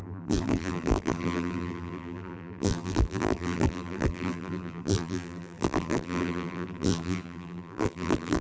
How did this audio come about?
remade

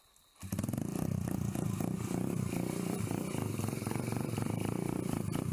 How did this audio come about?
remade